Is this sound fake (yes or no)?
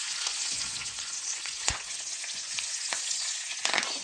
yes